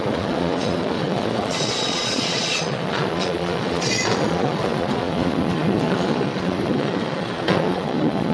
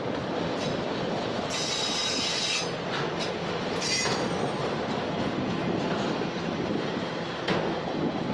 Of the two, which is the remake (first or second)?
first